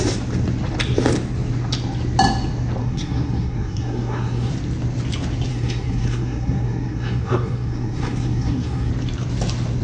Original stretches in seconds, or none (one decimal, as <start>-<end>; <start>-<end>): 0.0-2.8; 4.5-5.5; 8.9-9.8